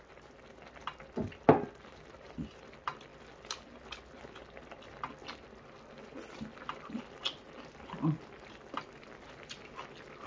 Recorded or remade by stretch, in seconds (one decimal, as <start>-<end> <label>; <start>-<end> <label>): 0.0-10.3 recorded